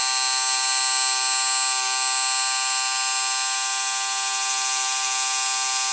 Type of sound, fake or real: real